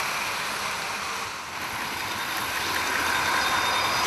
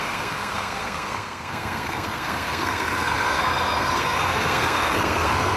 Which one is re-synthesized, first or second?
second